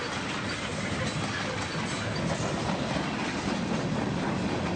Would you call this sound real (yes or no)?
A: yes